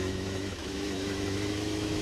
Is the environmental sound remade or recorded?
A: remade